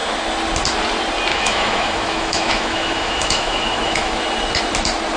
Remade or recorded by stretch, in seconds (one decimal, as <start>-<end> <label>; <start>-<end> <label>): 0.0-1.3 recorded; 1.3-4.2 remade; 4.2-5.2 recorded